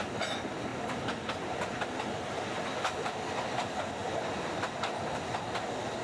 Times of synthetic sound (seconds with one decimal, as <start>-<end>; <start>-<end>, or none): 0.7-1.9; 4.0-4.5